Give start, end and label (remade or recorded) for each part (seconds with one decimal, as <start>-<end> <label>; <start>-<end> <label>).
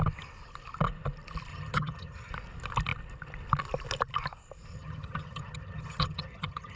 0.0-1.5 recorded; 1.5-2.3 remade; 2.3-4.7 recorded; 4.7-6.8 remade